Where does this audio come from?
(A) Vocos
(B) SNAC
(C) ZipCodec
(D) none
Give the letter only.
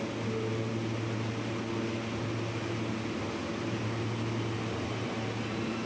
D